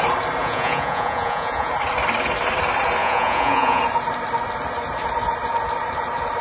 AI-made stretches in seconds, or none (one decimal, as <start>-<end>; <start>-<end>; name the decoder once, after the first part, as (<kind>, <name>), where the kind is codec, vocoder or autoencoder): 0.4-1.7 (vocoder, Vocos); 3.0-3.8